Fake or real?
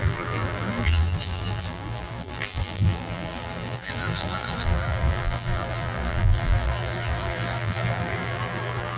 fake